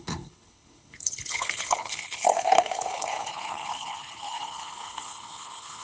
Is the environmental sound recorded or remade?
remade